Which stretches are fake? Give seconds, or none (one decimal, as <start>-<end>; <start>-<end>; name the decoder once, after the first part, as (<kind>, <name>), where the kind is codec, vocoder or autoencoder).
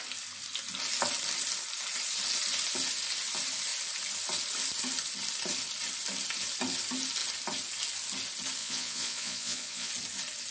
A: 8.6-9.9 (vocoder, Vocos)